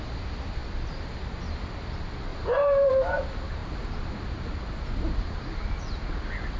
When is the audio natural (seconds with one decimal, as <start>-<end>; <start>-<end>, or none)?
0.0-2.3; 2.9-6.6